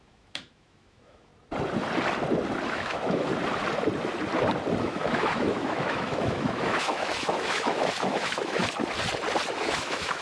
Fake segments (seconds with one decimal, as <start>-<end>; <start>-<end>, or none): 0.0-1.3; 2.7-3.3; 4.8-8.6; 9.5-10.2